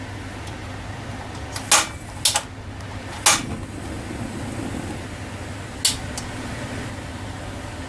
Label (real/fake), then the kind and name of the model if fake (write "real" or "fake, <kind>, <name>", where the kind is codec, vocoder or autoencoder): real